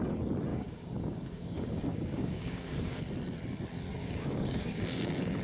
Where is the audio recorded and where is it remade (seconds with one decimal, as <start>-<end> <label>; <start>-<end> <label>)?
0.0-0.5 recorded; 0.5-3.0 remade; 3.0-3.9 recorded; 3.9-5.4 remade